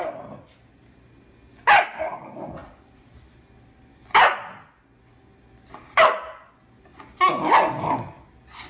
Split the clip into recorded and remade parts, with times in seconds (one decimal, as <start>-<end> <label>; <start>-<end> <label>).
0.0-8.7 recorded